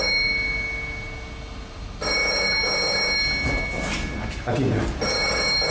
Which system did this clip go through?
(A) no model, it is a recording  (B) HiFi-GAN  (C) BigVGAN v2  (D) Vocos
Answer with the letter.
A